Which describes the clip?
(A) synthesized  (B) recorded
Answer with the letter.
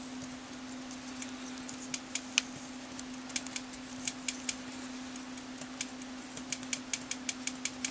B